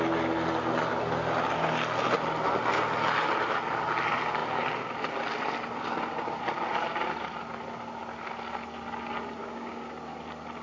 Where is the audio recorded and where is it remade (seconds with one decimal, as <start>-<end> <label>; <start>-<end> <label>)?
0.0-9.4 recorded; 9.4-9.9 remade; 9.9-10.6 recorded